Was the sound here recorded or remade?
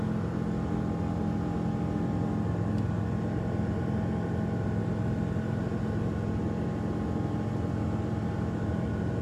recorded